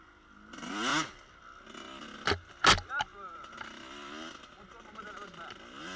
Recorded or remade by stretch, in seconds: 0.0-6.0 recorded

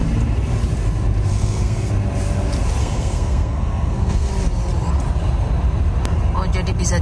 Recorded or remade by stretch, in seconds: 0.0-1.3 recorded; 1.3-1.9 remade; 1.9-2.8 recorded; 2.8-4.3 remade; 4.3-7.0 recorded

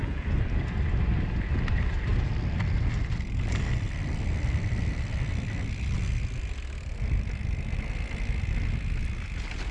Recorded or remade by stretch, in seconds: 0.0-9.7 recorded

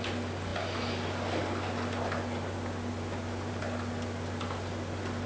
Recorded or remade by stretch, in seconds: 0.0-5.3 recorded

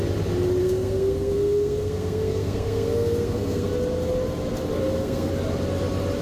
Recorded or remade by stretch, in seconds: 0.0-0.6 recorded; 0.6-3.7 remade; 3.7-4.8 recorded; 4.8-5.3 remade; 5.3-6.2 recorded

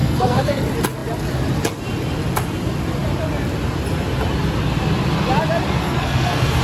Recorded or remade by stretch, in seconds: 0.0-0.6 remade; 0.6-5.8 recorded; 5.8-6.6 remade